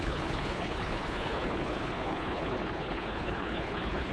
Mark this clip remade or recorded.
remade